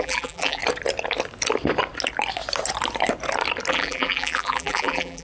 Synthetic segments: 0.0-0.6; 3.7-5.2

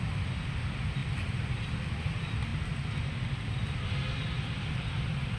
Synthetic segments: 0.0-2.5; 4.7-5.4

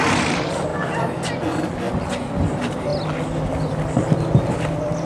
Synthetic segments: 0.0-0.7; 2.5-2.9; 4.5-5.1